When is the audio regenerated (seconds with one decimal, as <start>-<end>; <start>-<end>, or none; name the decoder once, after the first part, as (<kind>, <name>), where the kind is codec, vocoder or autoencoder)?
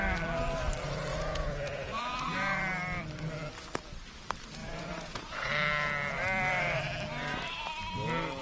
1.1-2.6 (vocoder, Vocos); 4.6-5.5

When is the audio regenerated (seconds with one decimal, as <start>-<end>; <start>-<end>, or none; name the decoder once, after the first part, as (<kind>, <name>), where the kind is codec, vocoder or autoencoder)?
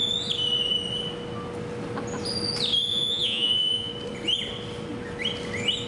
2.9-3.9 (vocoder, Vocos)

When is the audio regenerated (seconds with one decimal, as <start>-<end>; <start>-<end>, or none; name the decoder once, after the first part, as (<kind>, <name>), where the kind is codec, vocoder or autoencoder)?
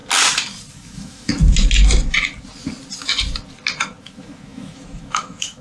0.7-1.3 (autoencoder, DAC-VAE); 4.0-5.6